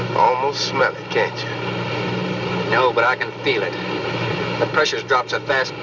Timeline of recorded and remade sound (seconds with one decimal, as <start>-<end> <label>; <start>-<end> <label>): 0.0-5.8 recorded